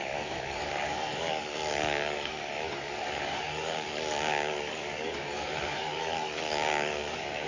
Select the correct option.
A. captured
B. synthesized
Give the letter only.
B